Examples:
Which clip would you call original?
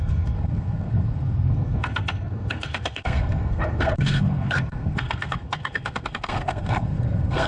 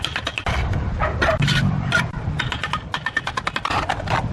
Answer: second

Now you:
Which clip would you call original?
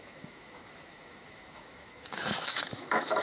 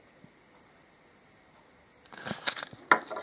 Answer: second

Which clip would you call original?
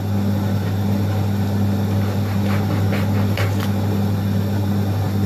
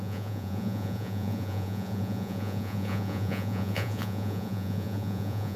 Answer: first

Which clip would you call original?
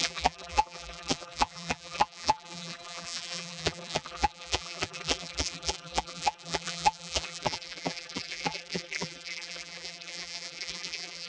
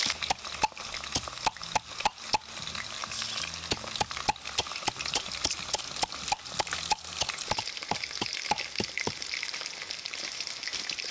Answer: second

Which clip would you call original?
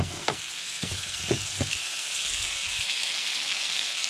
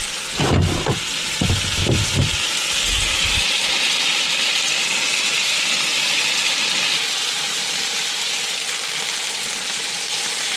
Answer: second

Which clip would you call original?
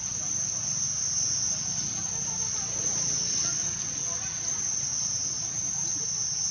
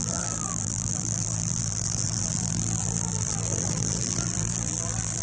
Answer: first